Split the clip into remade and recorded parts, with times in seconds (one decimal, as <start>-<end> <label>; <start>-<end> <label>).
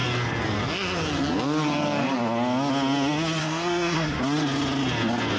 0.0-3.4 recorded; 3.4-4.2 remade; 4.2-5.4 recorded